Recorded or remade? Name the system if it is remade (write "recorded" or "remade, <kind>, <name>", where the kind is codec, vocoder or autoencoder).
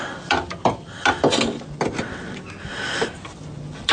recorded